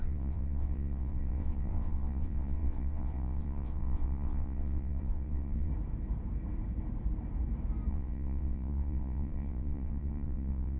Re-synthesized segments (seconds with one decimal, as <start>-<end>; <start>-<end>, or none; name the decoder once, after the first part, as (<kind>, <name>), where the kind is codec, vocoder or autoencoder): 0.0-5.7 (vocoder, WaveNeXt); 7.9-10.8